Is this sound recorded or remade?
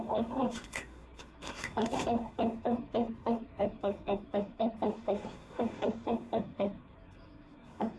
remade